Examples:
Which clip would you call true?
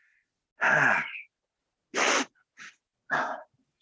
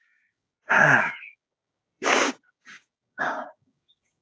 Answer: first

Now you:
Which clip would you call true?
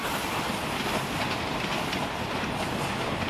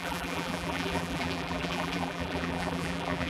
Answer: first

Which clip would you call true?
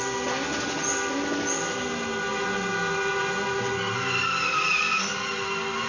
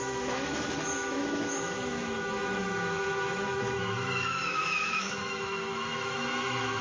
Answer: first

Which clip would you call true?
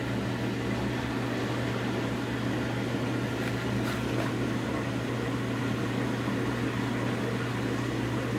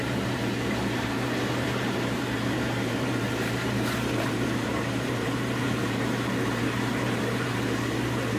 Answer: first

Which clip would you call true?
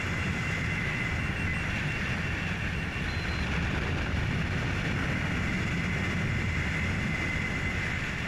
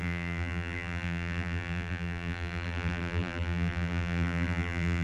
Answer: first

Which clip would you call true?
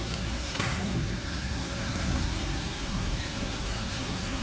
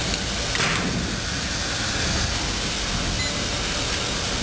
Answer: second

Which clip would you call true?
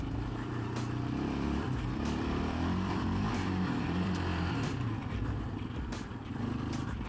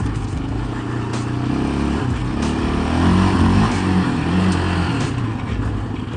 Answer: second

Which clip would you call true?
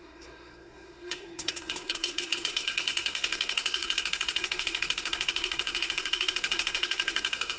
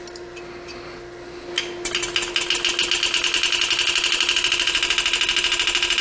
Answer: second